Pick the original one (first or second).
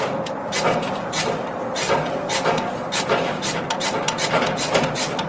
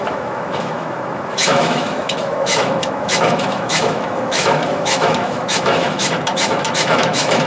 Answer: first